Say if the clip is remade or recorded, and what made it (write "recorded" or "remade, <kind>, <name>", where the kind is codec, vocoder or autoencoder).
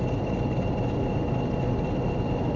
remade, vocoder, BigVGAN v2